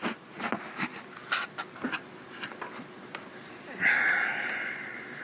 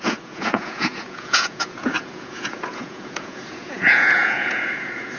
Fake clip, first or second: second